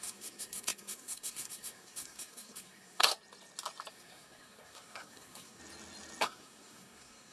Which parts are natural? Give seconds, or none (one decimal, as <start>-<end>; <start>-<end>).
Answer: 3.1-3.9; 5.6-6.2